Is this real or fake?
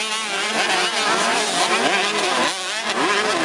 real